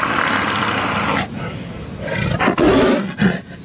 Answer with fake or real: real